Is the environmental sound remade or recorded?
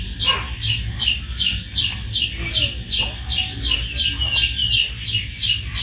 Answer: recorded